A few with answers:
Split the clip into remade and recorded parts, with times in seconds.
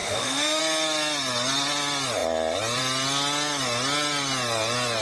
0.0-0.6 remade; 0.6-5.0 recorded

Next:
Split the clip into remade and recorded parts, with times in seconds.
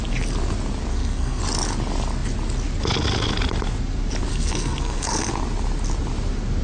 0.0-0.9 recorded; 0.9-1.4 remade; 1.4-4.3 recorded; 4.3-5.3 remade; 5.3-6.6 recorded